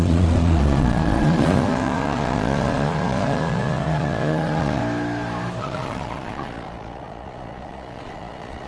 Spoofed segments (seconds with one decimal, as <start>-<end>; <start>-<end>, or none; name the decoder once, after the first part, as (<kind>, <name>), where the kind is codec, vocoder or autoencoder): 0.0-4.8 (vocoder, Vocos); 5.6-8.7